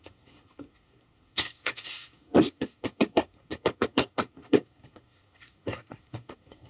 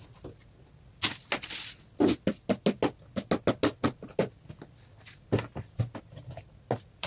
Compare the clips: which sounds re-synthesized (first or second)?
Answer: first